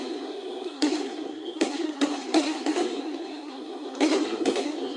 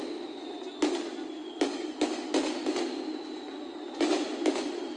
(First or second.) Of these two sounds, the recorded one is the second